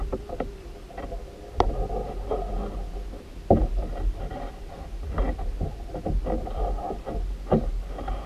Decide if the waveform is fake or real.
real